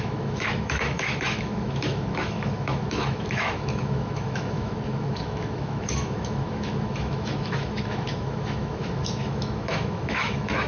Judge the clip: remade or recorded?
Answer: remade